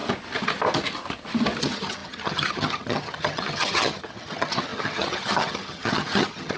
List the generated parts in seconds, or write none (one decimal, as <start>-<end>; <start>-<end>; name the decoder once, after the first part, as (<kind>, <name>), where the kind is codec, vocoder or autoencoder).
1.6-6.6 (vocoder, HiFi-GAN)